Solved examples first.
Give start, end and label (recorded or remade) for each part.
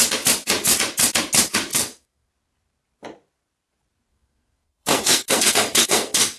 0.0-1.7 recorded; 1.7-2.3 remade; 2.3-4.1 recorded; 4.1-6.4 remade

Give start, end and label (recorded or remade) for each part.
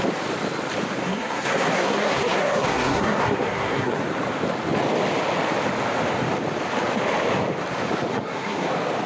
0.0-1.0 recorded; 1.0-4.0 remade; 4.0-8.1 recorded; 8.1-8.7 remade; 8.7-9.1 recorded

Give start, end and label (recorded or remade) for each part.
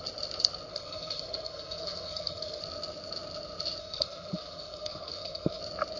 0.0-0.7 recorded; 0.7-2.6 remade; 2.6-3.8 recorded; 3.8-5.6 remade; 5.6-6.0 recorded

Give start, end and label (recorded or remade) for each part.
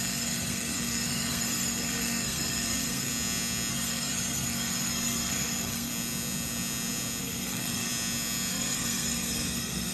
0.0-3.1 remade; 3.1-3.7 recorded; 3.7-5.9 remade; 5.9-7.2 recorded; 7.2-7.9 remade; 7.9-8.5 recorded; 8.5-9.9 remade